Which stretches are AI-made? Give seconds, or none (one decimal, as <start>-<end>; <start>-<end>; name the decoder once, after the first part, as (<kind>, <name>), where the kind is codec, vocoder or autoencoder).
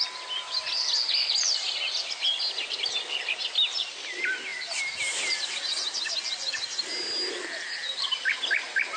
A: none